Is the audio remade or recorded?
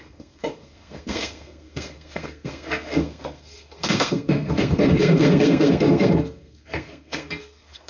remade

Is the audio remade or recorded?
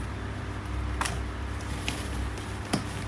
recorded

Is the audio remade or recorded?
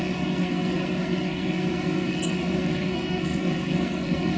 remade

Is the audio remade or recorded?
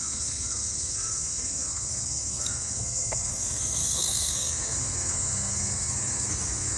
remade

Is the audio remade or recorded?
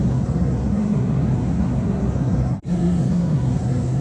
remade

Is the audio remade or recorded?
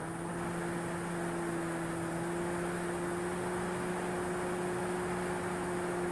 recorded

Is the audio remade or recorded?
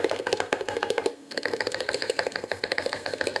remade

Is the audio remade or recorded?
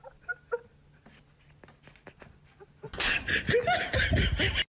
recorded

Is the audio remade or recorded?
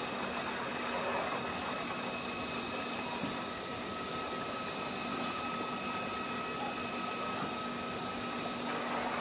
recorded